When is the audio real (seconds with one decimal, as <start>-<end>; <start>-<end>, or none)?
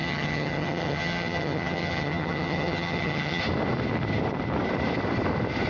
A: 3.4-5.7